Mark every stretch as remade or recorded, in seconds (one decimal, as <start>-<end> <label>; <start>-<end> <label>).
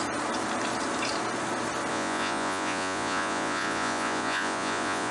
0.0-1.9 recorded; 1.9-5.1 remade